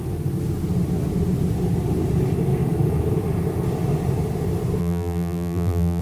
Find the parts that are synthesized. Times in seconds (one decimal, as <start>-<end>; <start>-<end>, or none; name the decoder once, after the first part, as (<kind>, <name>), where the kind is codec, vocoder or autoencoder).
4.8-6.0 (vocoder, BigVGAN v2)